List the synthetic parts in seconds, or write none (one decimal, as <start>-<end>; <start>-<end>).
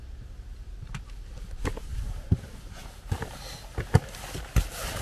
1.9-3.4